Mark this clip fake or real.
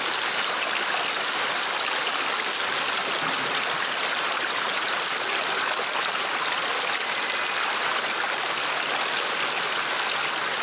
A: real